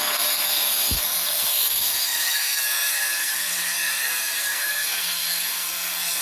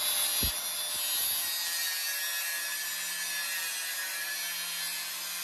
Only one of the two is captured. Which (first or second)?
second